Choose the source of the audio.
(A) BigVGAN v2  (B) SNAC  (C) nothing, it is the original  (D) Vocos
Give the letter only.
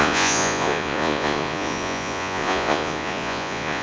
D